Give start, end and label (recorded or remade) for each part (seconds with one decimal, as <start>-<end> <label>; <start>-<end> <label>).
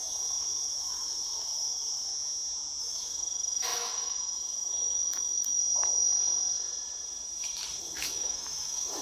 0.0-2.1 remade; 2.1-2.8 recorded; 2.8-5.6 remade; 5.6-7.8 recorded; 7.8-9.0 remade